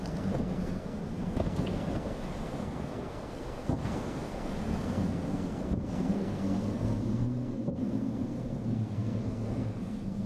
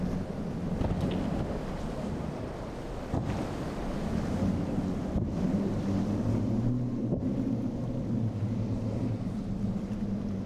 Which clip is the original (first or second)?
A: second